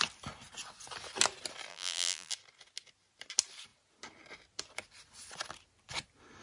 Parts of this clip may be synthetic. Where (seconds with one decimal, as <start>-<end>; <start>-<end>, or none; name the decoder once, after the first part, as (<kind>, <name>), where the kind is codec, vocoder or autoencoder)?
1.7-2.3 (vocoder, BigVGAN v2)